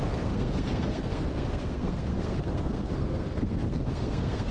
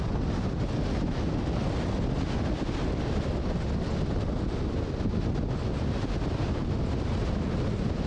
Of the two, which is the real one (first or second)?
second